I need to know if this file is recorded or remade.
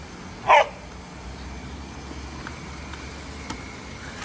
recorded